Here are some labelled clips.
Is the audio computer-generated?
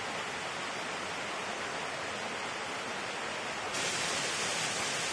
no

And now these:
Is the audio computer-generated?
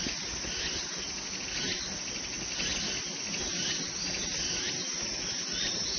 no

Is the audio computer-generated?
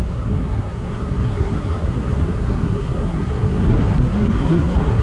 yes